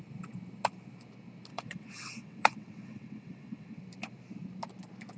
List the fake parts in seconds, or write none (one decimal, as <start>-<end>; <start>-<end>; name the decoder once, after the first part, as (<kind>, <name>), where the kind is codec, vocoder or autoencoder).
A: 1.5-3.8 (vocoder, WaveNeXt)